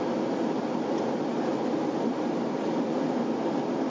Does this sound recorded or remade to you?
recorded